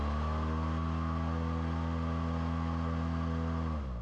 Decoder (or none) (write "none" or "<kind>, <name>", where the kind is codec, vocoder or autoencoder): none